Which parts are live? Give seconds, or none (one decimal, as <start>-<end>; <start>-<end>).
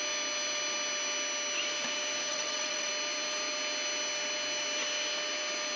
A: 0.0-2.3; 2.9-5.8